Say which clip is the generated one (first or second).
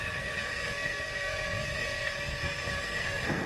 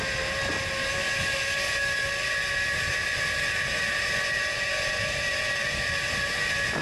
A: first